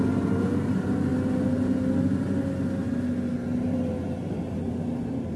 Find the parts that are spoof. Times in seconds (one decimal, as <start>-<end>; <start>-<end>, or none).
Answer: none